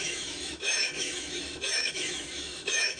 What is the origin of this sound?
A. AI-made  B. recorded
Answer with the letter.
A